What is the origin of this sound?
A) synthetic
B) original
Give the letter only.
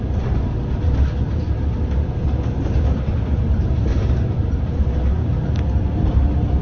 B